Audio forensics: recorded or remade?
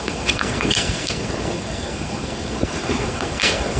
remade